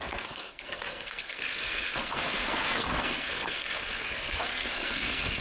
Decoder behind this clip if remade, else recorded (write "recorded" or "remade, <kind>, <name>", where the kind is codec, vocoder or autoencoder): remade, codec, SNAC